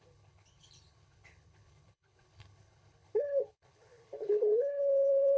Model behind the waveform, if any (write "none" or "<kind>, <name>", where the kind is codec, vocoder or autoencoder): codec, HILCodec